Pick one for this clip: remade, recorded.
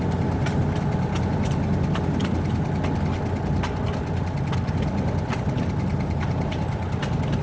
recorded